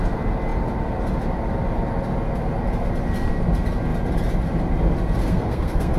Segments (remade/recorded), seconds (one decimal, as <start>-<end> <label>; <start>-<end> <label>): 0.0-5.2 recorded; 5.2-6.0 remade